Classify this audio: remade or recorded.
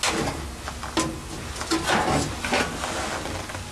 recorded